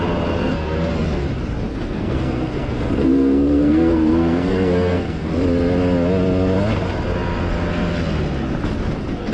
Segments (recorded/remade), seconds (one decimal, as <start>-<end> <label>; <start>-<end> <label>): 0.0-0.4 recorded; 0.4-0.9 remade; 0.9-1.7 recorded; 1.7-5.3 remade; 5.3-9.3 recorded